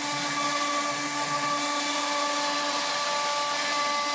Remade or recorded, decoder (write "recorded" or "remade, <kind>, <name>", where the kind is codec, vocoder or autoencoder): recorded